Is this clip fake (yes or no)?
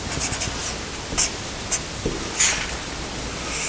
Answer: no